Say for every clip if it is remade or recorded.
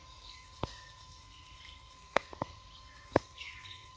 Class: remade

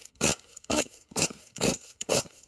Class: remade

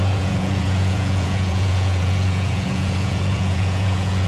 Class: remade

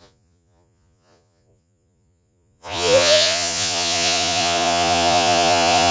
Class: remade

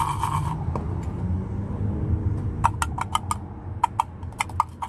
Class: recorded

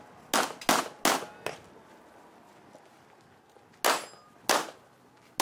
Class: recorded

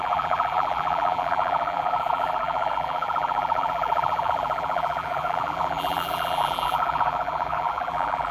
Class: remade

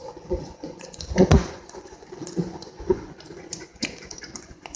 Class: remade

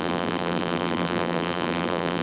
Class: remade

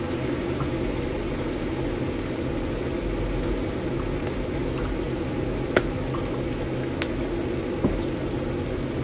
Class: recorded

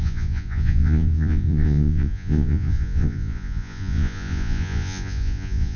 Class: remade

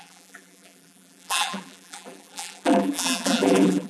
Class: remade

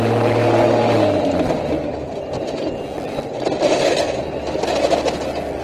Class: recorded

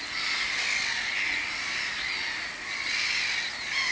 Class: recorded